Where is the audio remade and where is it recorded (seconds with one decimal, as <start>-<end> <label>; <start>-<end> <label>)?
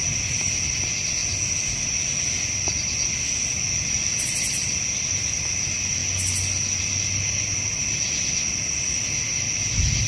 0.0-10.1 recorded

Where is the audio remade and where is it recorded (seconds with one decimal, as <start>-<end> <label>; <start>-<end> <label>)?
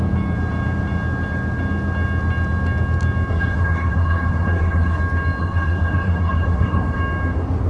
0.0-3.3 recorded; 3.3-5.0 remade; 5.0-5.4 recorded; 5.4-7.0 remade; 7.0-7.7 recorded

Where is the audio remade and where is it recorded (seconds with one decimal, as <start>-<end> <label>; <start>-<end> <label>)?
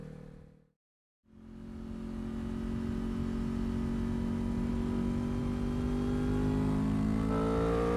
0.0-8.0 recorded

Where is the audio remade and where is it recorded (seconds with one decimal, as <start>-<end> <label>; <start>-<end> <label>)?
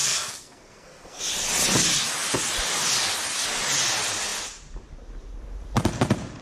0.0-1.2 remade; 1.2-6.4 recorded